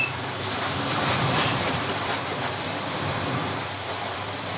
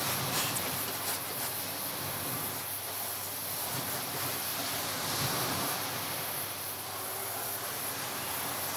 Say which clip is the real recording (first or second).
second